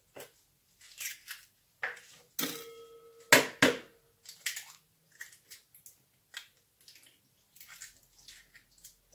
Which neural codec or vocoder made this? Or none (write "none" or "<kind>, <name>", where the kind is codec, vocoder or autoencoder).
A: none